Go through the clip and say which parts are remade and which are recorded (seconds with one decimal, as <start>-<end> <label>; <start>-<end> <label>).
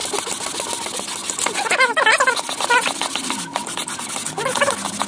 0.0-5.1 recorded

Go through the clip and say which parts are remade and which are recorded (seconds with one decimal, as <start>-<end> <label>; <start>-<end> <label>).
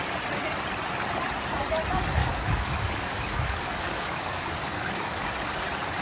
0.0-2.2 recorded; 2.2-5.2 remade; 5.2-6.0 recorded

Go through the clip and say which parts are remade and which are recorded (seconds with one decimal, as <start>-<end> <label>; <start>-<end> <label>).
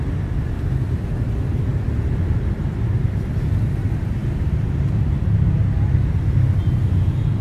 0.0-7.4 recorded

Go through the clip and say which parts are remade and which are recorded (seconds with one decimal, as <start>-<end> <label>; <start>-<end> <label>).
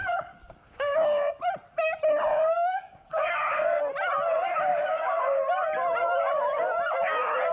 0.0-1.4 remade; 1.4-2.3 recorded; 2.3-3.8 remade; 3.8-4.7 recorded; 4.7-5.4 remade; 5.4-7.5 recorded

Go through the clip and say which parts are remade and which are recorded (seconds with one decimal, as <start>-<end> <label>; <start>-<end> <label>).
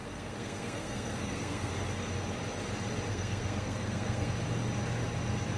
0.0-1.7 remade; 1.7-3.1 recorded; 3.1-4.3 remade; 4.3-5.6 recorded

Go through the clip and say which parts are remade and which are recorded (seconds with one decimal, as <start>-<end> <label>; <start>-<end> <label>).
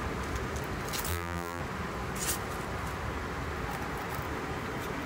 0.0-1.1 recorded; 1.1-1.6 remade; 1.6-5.1 recorded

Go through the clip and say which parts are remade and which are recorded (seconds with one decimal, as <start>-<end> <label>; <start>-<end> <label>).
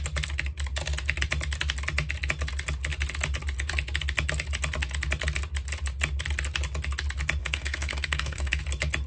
0.0-7.4 recorded; 7.4-8.6 remade; 8.6-9.1 recorded